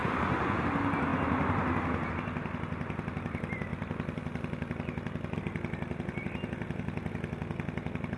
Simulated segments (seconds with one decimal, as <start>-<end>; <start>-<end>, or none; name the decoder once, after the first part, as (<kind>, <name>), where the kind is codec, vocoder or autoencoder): 0.0-0.6 (vocoder, Vocos)